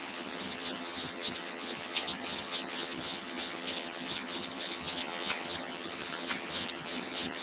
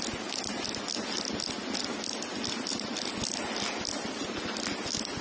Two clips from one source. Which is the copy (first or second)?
first